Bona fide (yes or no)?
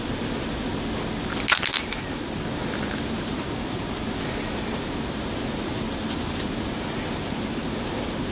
yes